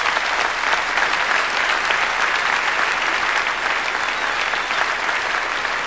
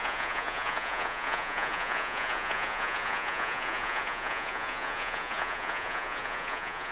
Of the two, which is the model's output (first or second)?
second